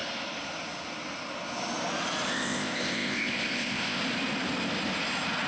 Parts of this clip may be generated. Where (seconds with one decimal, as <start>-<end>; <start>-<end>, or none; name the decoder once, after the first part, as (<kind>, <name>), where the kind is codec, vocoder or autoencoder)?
2.3-4.0 (codec, ZipCodec)